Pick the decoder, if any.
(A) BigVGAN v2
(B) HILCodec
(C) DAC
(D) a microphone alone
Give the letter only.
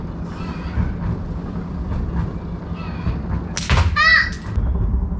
D